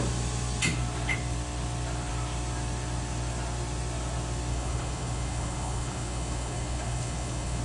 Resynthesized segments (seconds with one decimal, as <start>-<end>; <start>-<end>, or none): 4.5-7.6